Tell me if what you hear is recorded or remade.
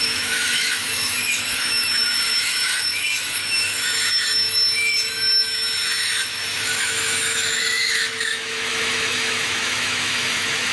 remade